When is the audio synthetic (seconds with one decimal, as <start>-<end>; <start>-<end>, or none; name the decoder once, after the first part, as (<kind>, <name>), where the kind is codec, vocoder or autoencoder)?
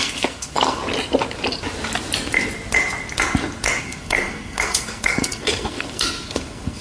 0.0-0.8 (codec, SNAC); 3.8-6.8